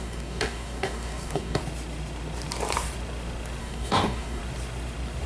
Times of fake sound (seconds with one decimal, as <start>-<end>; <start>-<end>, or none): 0.0-1.6; 3.6-4.4